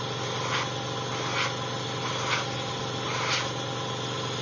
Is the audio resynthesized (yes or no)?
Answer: no